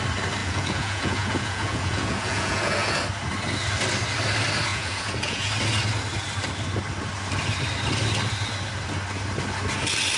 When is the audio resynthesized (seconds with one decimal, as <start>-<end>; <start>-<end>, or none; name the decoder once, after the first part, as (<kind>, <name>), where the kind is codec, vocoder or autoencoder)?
0.4-2.9 (vocoder, Vocos); 4.7-5.5